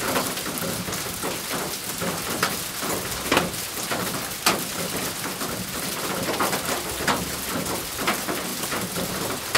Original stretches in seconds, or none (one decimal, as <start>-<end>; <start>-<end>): 0.0-9.6